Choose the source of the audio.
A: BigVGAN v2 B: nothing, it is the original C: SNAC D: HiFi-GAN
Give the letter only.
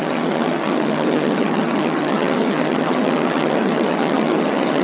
D